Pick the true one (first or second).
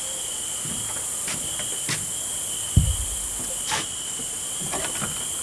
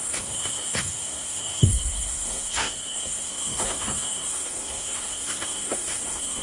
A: first